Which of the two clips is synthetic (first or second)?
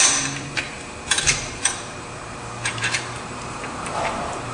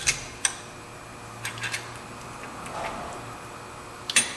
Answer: first